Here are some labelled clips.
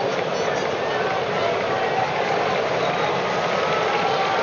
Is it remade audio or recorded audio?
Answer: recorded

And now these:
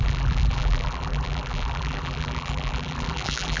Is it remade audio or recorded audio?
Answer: remade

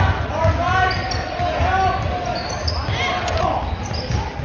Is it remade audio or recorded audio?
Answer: recorded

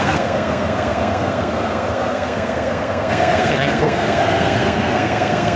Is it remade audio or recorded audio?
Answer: remade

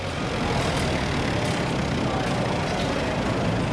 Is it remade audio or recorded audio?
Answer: remade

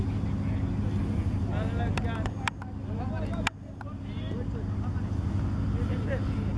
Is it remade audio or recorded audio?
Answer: recorded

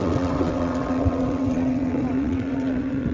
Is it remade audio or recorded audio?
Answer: remade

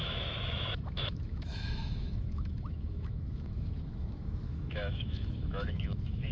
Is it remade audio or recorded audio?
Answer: remade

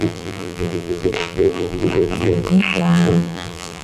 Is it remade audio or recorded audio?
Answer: remade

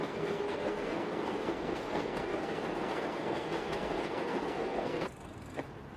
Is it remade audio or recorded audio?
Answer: remade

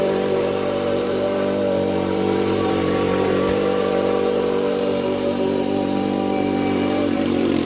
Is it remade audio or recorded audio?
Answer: remade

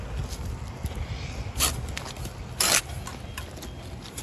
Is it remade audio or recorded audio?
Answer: recorded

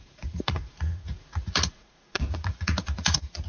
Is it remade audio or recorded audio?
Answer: remade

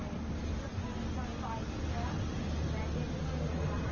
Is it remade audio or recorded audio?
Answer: recorded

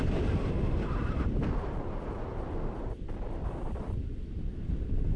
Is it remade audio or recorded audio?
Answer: recorded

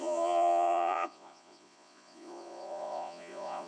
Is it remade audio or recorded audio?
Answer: remade